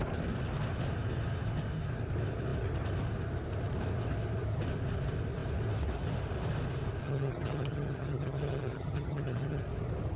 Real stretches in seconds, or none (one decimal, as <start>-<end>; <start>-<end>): 0.0-7.0; 9.6-10.2